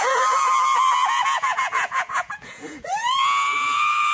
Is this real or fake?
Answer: fake